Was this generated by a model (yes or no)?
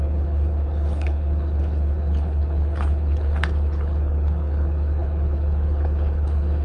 yes